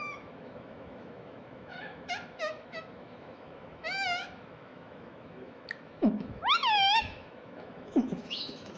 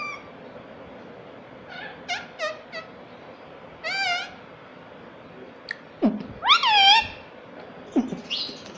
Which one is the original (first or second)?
second